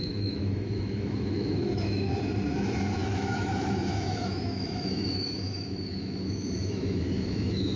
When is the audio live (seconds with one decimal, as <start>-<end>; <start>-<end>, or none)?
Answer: 2.1-3.0